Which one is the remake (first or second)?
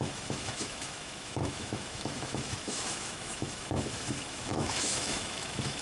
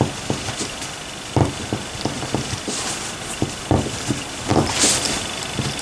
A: first